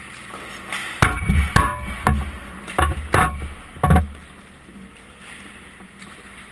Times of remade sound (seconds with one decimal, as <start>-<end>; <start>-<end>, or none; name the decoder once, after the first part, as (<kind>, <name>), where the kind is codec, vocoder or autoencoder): none